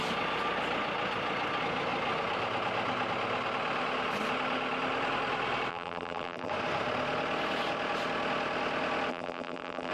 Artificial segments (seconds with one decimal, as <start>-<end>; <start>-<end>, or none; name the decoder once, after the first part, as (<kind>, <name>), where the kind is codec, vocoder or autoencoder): 5.7-6.5 (vocoder, BigVGAN v2); 9.1-9.9